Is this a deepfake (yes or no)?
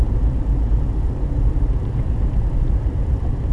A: yes